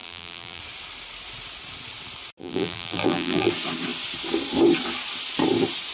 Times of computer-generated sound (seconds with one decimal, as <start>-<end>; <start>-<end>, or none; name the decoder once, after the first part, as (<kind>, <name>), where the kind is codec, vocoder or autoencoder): 0.0-0.6 (vocoder, BigVGAN v2); 2.4-3.5